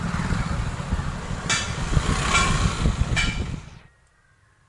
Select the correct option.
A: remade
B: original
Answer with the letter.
B